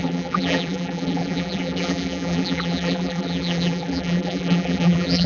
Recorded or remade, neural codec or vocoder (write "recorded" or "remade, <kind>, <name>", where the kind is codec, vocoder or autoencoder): remade, vocoder, BigVGAN v2